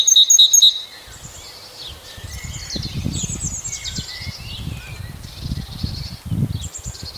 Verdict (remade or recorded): recorded